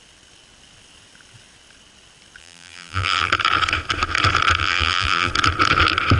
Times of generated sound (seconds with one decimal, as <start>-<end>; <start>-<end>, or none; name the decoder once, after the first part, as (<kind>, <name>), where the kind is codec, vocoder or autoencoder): 2.4-3.3 (vocoder, BigVGAN v2); 4.6-5.3